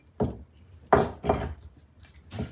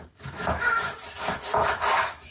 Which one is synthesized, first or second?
second